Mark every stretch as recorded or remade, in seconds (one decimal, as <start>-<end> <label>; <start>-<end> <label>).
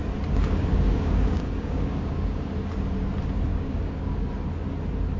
0.0-0.5 recorded; 0.5-2.5 remade; 2.5-3.5 recorded; 3.5-4.3 remade; 4.3-5.2 recorded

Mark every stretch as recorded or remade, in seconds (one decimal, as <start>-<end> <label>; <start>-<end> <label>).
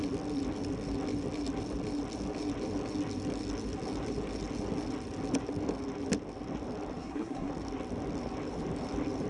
0.0-7.0 recorded; 7.0-7.5 remade; 7.5-9.3 recorded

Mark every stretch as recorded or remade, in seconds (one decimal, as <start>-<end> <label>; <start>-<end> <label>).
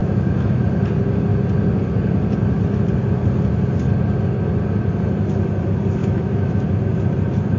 0.0-0.6 remade; 0.6-6.0 recorded; 6.0-6.9 remade; 6.9-7.6 recorded